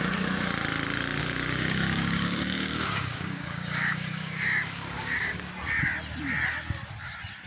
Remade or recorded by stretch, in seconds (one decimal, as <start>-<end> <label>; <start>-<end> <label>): 0.0-1.2 recorded; 1.2-5.5 remade; 5.5-7.5 recorded